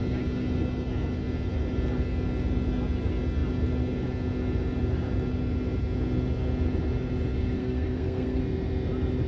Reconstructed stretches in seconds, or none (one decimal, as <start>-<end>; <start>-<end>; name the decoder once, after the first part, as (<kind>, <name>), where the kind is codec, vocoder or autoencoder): 7.6-8.4 (codec, SNAC)